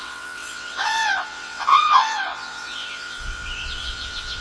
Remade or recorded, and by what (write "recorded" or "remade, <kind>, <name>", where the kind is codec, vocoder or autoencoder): remade, vocoder, WaveNeXt